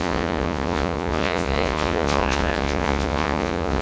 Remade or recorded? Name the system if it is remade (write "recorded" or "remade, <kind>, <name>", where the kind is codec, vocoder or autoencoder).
remade, vocoder, Vocos